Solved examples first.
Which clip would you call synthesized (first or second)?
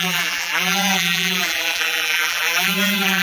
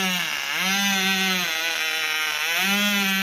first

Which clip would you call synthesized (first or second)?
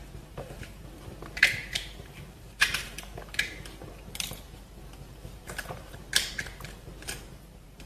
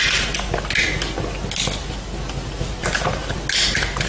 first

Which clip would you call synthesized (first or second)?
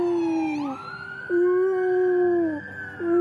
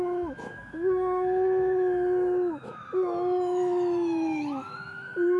second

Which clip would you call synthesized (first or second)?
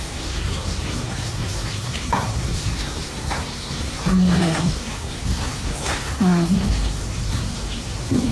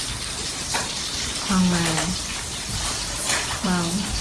first